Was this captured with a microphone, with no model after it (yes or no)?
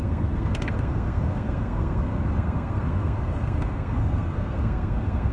no